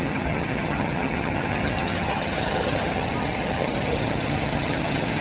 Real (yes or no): no